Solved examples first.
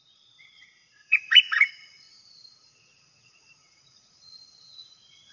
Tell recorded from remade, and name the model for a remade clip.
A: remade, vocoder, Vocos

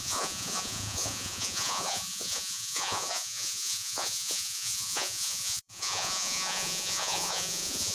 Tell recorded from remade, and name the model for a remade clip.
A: remade, vocoder, Vocos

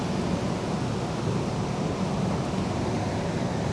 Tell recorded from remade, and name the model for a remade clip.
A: recorded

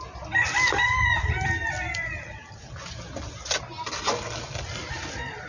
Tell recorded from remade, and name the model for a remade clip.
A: recorded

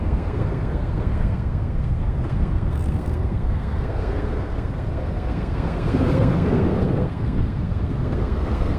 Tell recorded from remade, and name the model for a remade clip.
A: remade, codec, SNAC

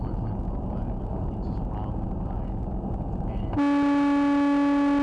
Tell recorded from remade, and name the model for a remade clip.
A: recorded